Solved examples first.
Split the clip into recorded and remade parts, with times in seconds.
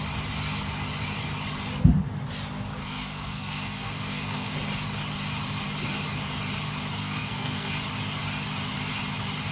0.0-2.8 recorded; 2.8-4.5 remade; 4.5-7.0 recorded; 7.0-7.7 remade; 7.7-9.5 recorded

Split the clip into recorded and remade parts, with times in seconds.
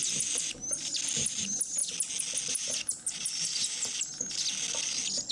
0.0-5.3 recorded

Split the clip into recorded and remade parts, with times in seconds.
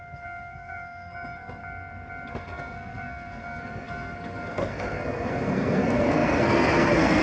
0.0-1.6 remade; 1.6-2.3 recorded; 2.3-7.2 remade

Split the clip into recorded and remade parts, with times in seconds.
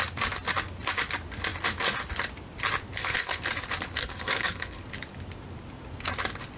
0.0-3.0 recorded; 3.0-3.5 remade; 3.5-4.0 recorded; 4.0-4.8 remade; 4.8-6.6 recorded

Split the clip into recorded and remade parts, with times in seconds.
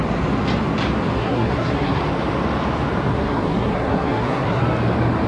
0.0-1.2 recorded; 1.2-2.0 remade; 2.0-3.1 recorded; 3.1-4.6 remade; 4.6-5.3 recorded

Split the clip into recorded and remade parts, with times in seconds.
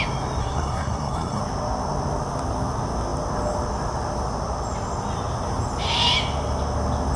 0.0-0.4 recorded; 0.4-1.4 remade; 1.4-7.2 recorded